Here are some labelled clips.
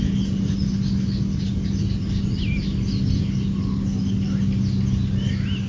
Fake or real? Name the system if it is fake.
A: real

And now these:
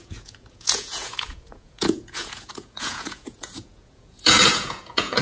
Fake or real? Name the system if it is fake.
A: fake, vocoder, Vocos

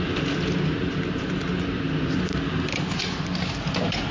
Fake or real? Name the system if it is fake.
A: real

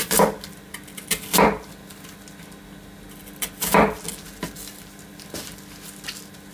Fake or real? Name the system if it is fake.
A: real